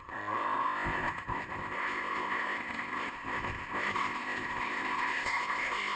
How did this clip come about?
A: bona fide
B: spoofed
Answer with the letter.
B